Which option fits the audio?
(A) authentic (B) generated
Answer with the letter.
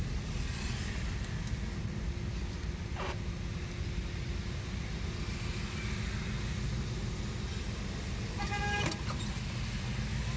A